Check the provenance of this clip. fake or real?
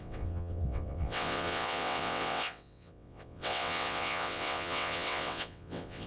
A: fake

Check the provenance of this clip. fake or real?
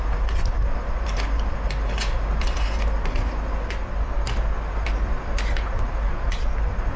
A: real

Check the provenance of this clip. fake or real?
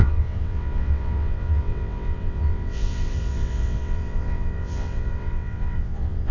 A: fake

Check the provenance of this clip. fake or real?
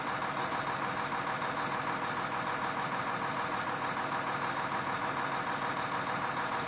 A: real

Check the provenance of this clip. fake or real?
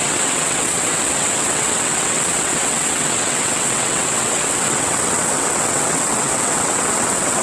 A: fake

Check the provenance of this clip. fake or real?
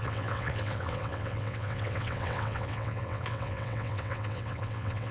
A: fake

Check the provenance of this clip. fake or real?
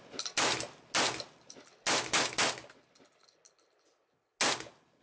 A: real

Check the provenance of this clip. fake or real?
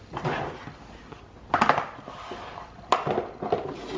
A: real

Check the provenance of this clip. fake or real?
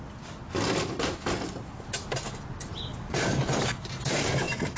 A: real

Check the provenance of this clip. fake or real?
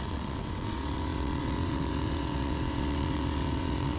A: fake